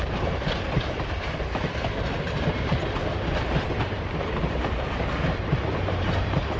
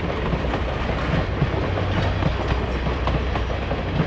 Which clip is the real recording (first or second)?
second